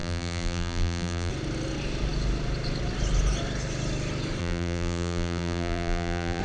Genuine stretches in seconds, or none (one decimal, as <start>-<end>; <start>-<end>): 1.3-4.4